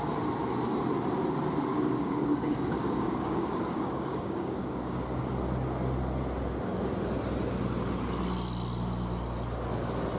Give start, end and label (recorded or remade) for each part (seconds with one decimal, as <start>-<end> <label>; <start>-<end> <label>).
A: 0.0-1.7 recorded; 1.7-5.2 remade; 5.2-10.2 recorded